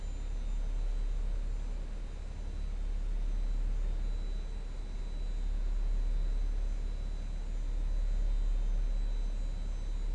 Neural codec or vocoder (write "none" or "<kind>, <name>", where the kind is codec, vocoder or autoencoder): none